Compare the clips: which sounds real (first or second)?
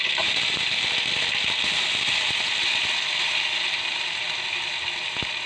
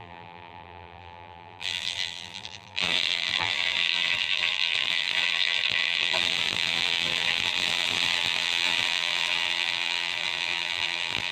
first